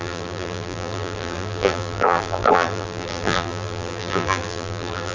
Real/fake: fake